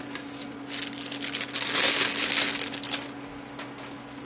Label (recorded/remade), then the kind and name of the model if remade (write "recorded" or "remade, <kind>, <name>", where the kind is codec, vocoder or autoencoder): recorded